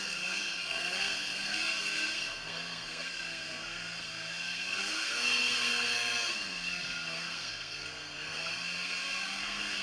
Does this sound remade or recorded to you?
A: remade